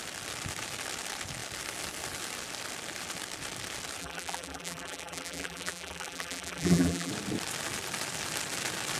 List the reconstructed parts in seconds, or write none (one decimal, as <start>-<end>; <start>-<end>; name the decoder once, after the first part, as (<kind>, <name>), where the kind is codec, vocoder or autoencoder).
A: 4.0-7.1 (vocoder, BigVGAN v2)